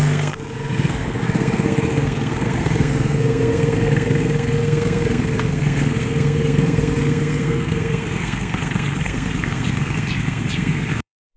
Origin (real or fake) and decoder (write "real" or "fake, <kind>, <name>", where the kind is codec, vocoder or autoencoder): fake, codec, SNAC